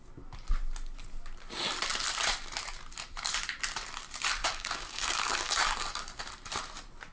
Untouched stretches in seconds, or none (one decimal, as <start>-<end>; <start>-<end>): 0.0-4.4; 6.3-7.1